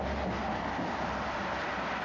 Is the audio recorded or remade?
recorded